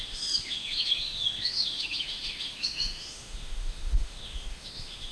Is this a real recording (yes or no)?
no